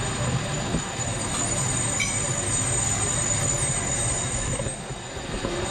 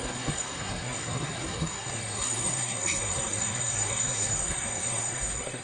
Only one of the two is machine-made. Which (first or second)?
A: second